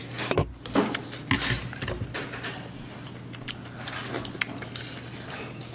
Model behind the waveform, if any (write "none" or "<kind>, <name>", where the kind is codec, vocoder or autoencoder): none